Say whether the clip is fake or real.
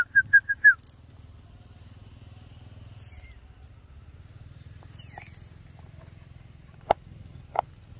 real